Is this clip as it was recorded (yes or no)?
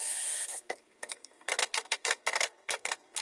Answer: no